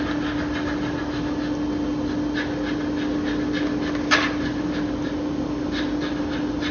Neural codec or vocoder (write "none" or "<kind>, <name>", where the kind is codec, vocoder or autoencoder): none